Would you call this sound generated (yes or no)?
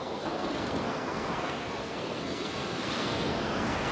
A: yes